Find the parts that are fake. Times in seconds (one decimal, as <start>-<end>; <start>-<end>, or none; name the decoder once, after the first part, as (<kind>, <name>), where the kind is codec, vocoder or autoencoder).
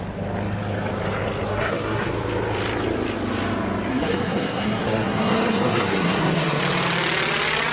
1.5-2.1 (codec, SNAC); 3.9-6.6